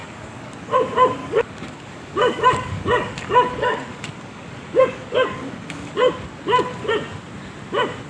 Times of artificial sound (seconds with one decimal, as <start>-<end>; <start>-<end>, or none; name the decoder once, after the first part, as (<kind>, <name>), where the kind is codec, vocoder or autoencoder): 0.0-0.6 (codec, DAC); 1.2-6.1